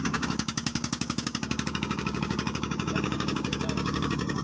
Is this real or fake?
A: fake